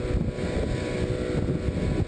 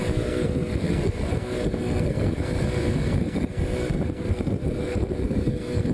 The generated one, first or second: second